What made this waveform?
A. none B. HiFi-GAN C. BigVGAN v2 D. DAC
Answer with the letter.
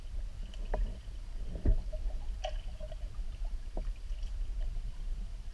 C